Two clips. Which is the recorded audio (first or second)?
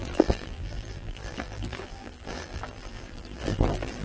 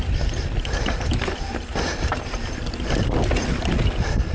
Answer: second